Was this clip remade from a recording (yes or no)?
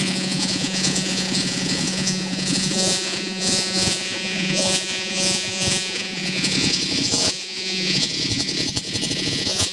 yes